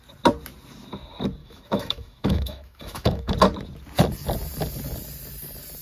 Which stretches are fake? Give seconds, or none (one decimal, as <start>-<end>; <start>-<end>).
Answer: 1.4-3.3